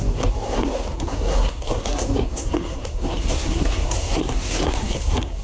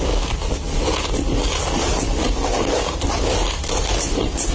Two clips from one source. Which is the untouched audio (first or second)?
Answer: second